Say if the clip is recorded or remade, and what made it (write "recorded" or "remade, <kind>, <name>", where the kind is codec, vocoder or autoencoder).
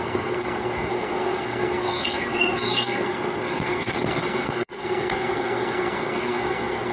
remade, codec, SNAC